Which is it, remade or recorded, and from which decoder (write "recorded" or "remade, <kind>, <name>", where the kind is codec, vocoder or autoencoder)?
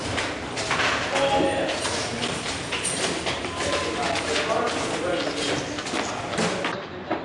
recorded